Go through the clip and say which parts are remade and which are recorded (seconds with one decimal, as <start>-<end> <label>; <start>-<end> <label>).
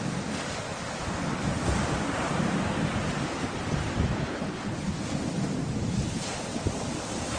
0.0-4.2 recorded; 4.2-4.8 remade; 4.8-7.4 recorded